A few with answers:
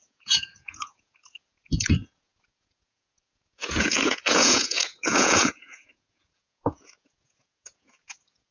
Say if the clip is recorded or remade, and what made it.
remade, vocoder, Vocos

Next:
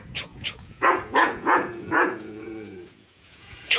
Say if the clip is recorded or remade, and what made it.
remade, vocoder, Vocos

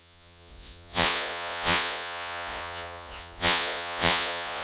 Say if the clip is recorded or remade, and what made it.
remade, vocoder, Vocos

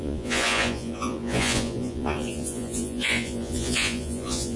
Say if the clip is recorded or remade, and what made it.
remade, vocoder, Vocos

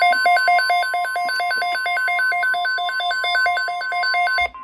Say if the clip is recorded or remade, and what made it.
recorded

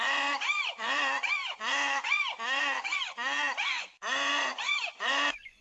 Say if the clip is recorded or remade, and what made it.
remade, vocoder, Vocos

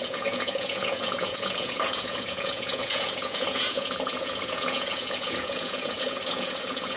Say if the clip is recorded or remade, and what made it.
remade, vocoder, Vocos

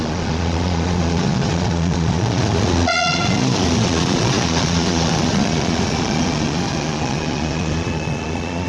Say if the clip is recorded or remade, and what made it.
remade, vocoder, Vocos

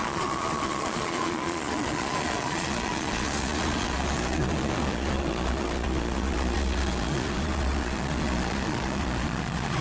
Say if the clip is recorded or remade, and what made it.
remade, vocoder, Vocos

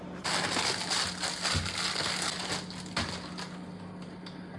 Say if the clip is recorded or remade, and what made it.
recorded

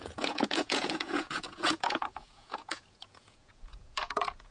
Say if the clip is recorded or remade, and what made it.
remade, vocoder, Vocos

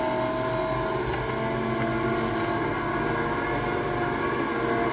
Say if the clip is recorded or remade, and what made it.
recorded